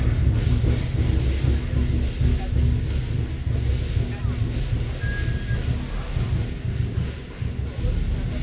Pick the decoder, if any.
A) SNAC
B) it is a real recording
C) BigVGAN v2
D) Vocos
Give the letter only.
B